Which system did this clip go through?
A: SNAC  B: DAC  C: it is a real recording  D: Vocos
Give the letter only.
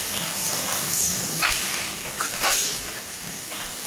B